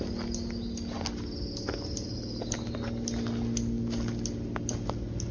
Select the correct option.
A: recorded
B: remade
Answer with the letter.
A